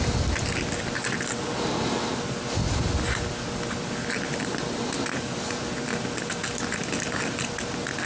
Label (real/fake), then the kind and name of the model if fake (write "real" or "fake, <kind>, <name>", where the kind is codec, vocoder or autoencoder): real